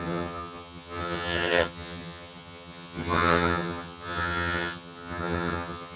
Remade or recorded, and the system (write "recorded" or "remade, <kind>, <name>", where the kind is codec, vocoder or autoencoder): remade, vocoder, HiFi-GAN